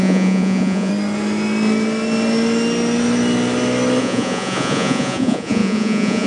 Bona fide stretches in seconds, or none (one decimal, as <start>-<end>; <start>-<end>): 0.9-4.0